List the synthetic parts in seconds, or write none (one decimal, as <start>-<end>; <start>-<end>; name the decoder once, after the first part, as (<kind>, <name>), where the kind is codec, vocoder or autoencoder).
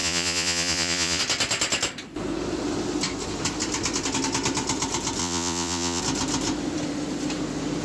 0.0-1.2 (vocoder, Vocos); 5.2-6.0